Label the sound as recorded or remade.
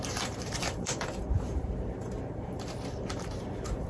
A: remade